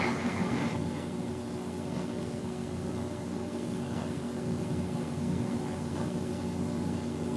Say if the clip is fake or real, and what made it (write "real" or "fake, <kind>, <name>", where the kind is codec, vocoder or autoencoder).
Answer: fake, codec, SNAC